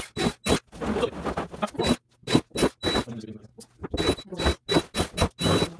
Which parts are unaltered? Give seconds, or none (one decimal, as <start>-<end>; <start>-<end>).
0.0-5.8